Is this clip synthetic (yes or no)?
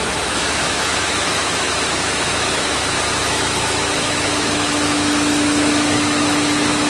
yes